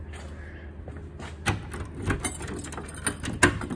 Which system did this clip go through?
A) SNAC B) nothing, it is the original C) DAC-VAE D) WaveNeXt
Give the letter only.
B